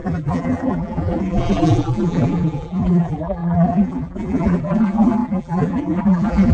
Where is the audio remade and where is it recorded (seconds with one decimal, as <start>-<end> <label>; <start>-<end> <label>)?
0.0-6.5 remade